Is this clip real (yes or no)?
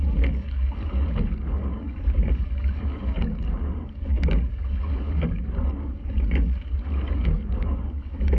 no